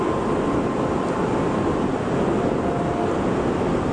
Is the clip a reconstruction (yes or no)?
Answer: no